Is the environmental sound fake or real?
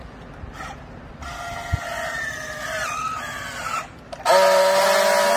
real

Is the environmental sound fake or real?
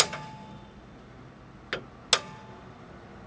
real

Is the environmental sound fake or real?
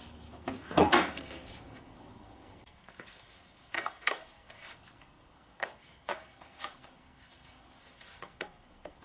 fake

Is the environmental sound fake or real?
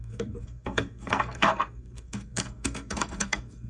fake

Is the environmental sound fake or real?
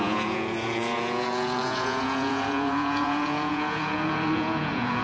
fake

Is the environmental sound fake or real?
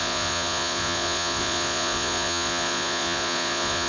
fake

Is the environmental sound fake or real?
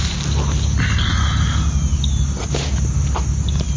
real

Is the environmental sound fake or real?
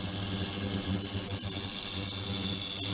real